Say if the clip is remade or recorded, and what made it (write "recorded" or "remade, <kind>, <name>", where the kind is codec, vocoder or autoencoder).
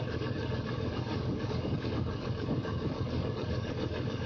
remade, codec, DAC